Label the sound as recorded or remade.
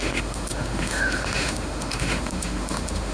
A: remade